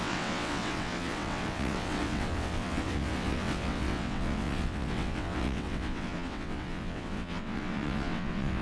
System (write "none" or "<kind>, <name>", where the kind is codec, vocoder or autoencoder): vocoder, WaveNeXt